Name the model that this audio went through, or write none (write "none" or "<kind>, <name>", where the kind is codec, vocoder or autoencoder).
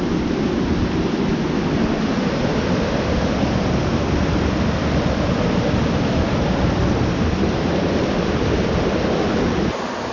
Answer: vocoder, BigVGAN v2